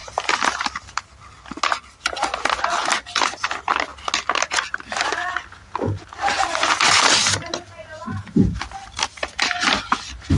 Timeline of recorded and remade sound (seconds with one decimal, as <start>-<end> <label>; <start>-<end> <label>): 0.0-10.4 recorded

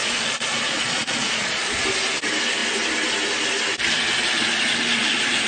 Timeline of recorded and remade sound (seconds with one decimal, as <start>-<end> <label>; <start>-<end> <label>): 0.0-1.8 remade; 1.8-5.5 recorded

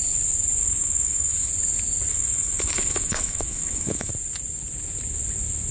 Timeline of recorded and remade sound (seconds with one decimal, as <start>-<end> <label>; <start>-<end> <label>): 0.0-0.6 recorded; 0.6-1.5 remade; 1.5-2.1 recorded; 2.1-4.1 remade; 4.1-5.7 recorded

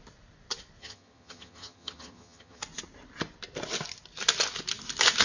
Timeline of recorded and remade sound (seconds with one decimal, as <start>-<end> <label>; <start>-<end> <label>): 0.0-0.8 recorded; 0.8-2.6 remade; 2.6-5.2 recorded

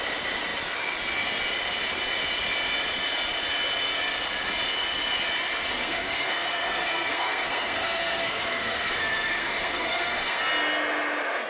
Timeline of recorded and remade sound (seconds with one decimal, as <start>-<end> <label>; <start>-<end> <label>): 0.0-5.8 recorded; 5.8-10.4 remade; 10.4-11.5 recorded